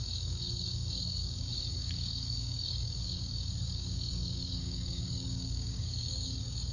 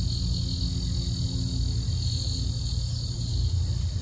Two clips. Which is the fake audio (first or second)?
first